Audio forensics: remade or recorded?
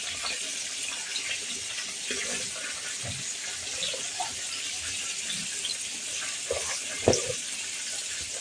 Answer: recorded